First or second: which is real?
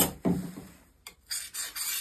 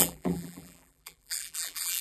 first